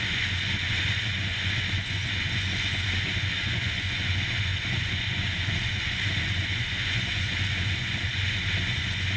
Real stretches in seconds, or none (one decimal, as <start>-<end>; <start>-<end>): none